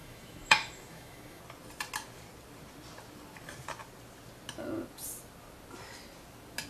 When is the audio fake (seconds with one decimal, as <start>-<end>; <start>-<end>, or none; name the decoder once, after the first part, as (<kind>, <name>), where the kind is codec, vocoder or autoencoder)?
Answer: 0.0-1.4 (autoencoder, DAC-VAE)